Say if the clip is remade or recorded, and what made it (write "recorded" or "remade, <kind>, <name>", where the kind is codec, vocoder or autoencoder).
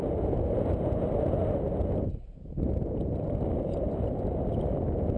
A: recorded